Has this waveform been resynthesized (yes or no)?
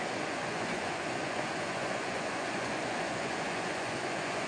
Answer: yes